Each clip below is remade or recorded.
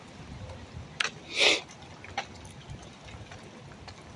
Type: recorded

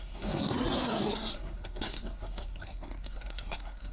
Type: remade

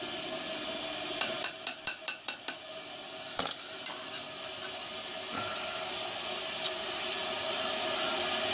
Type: recorded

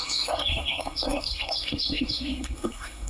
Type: remade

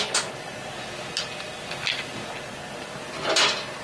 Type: recorded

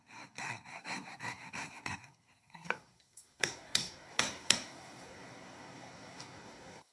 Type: remade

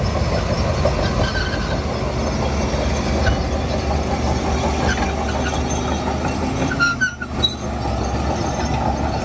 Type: recorded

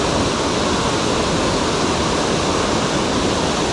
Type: recorded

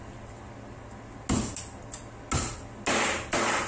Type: recorded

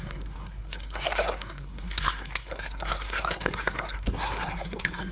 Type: remade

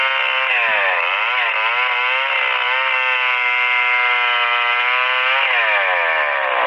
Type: recorded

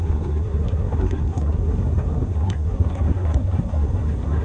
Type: remade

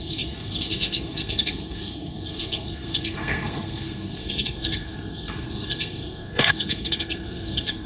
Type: remade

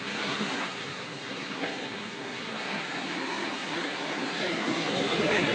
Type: remade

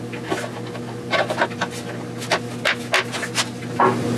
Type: recorded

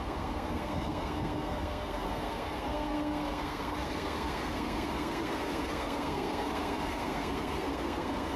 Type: remade